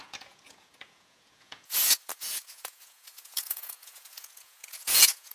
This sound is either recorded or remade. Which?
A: remade